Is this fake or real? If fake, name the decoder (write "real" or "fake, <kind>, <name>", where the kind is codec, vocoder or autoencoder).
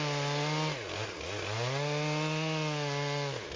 real